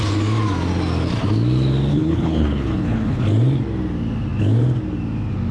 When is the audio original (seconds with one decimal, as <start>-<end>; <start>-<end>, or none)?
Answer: 0.0-1.9; 3.2-5.5